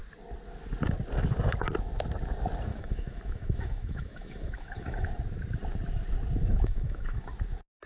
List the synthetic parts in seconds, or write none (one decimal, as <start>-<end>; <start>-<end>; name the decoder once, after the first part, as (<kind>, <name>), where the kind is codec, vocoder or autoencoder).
2.7-5.1 (autoencoder, DAC-VAE); 6.4-7.3